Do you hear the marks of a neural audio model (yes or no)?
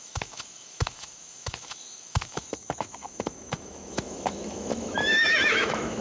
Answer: yes